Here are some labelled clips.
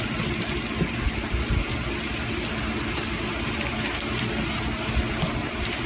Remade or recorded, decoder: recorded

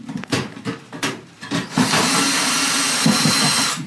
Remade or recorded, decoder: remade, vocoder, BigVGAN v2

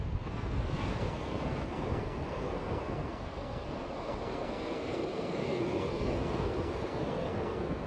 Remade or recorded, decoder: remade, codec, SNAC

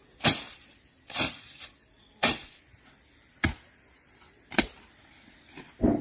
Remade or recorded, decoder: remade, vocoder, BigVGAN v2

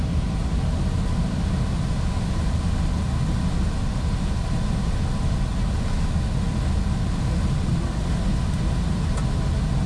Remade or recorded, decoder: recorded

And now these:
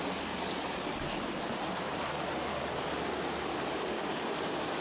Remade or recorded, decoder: recorded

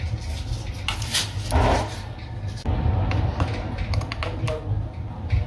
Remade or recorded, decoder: recorded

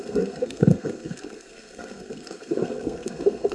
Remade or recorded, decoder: remade, codec, SNAC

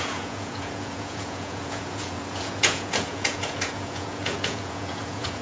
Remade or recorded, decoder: remade, vocoder, Vocos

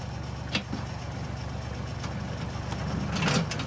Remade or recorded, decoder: recorded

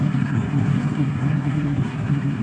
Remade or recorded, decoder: remade, codec, SNAC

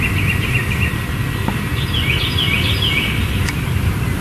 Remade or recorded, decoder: recorded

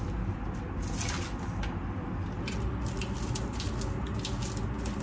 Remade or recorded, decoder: recorded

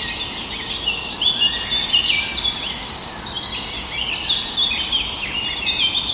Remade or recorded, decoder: recorded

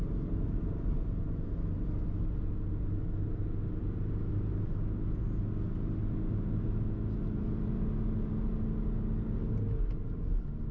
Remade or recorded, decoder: recorded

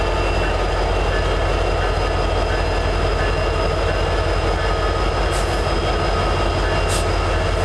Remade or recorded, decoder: recorded